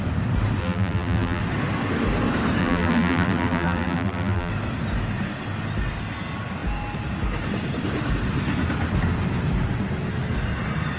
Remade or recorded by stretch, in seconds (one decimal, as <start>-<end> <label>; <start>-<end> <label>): 0.0-0.6 recorded; 0.6-1.4 remade; 1.4-2.6 recorded; 2.6-4.5 remade; 4.5-11.0 recorded